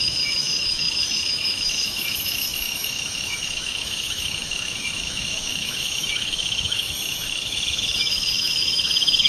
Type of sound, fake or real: fake